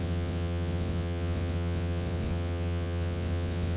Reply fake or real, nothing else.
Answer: fake